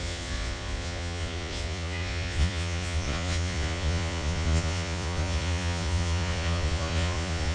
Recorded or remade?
remade